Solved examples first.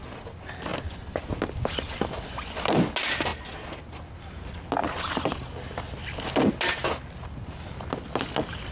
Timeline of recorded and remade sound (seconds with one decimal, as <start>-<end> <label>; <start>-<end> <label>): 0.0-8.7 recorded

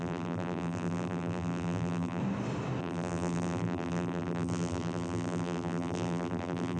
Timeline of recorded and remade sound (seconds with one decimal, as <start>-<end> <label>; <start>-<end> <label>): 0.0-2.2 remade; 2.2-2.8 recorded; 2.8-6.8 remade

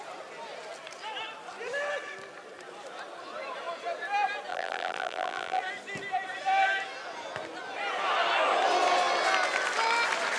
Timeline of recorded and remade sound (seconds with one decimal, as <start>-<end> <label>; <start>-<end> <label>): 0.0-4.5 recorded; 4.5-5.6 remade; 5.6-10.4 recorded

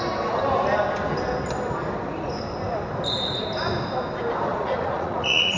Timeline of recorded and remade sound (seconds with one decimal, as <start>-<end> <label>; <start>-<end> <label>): 0.0-4.5 recorded; 4.5-5.6 remade

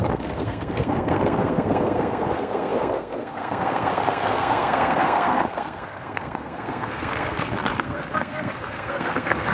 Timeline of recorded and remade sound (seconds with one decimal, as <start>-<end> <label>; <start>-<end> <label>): 0.0-9.5 remade